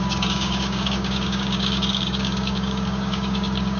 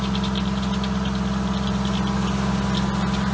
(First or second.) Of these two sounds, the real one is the second